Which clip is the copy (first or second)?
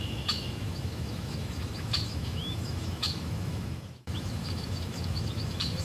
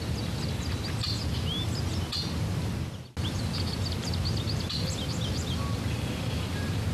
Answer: first